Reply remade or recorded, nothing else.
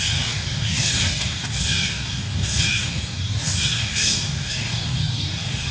remade